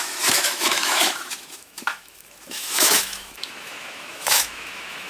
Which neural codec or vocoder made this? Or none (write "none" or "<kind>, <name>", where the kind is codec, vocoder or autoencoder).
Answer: autoencoder, DAC-VAE